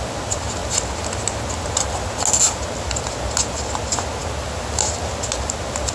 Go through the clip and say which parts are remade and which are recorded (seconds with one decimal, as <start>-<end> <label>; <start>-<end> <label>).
0.0-5.9 recorded

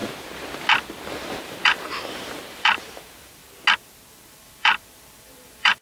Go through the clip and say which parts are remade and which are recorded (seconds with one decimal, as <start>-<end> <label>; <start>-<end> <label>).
0.0-1.1 recorded; 1.1-3.4 remade; 3.4-4.3 recorded; 4.3-5.8 remade

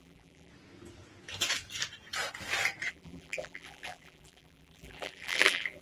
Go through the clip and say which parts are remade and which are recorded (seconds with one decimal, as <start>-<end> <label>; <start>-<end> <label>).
0.0-0.5 remade; 0.5-2.9 recorded; 2.9-5.8 remade